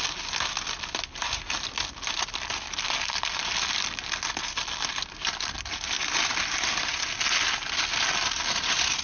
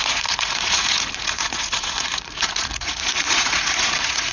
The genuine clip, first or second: first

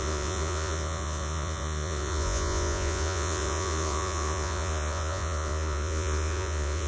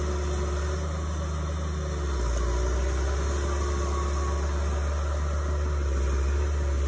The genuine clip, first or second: second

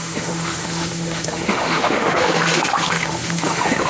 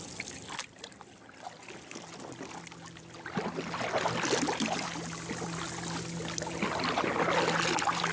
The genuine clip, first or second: second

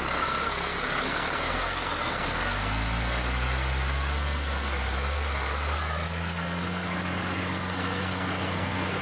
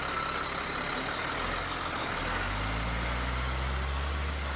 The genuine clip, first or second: second